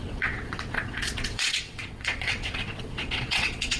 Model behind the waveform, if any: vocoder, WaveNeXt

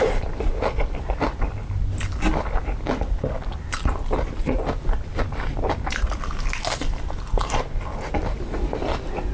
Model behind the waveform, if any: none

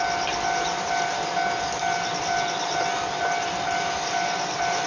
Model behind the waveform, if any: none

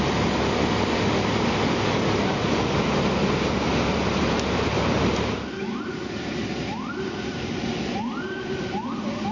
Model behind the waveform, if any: none